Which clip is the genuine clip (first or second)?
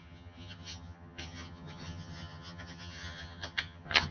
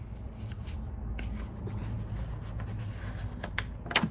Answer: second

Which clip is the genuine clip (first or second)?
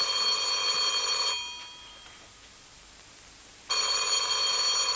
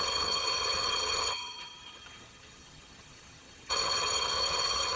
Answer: first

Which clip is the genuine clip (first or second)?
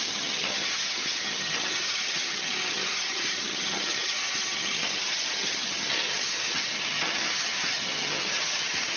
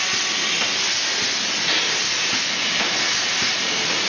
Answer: second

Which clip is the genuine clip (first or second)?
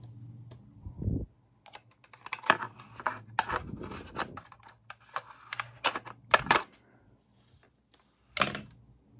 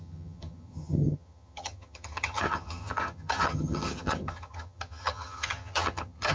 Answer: first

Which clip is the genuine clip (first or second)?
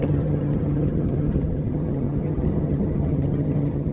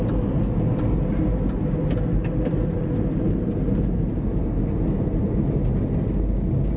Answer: second